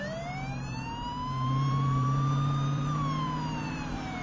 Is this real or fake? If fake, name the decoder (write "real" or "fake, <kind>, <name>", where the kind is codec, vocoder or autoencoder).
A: fake, vocoder, BigVGAN v2